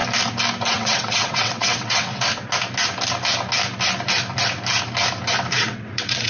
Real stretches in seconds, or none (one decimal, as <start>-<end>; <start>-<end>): 0.0-0.7; 2.3-5.5